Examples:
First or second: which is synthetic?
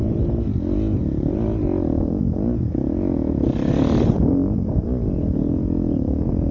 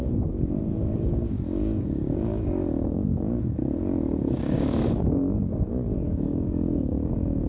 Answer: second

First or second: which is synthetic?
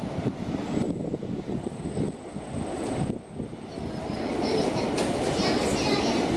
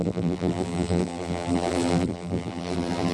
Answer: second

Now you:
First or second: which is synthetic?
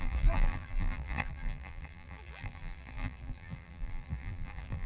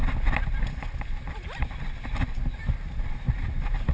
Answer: first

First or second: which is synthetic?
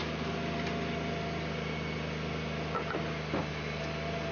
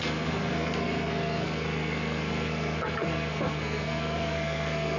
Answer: second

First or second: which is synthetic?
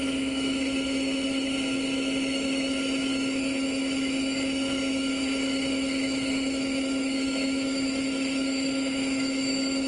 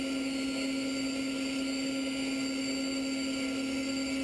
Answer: first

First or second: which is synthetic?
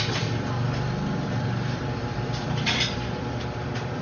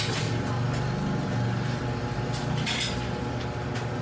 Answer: first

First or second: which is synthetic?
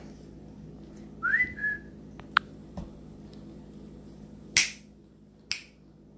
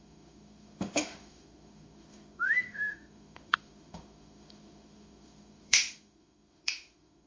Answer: second